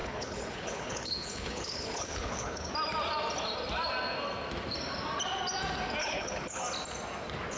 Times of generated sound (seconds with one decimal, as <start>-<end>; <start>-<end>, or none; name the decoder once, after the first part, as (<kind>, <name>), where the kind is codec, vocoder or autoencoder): 0.0-2.7 (codec, HILCodec); 6.0-6.6